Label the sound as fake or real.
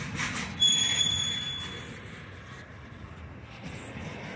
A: real